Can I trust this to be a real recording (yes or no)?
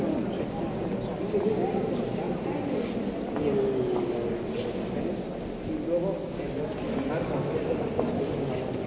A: yes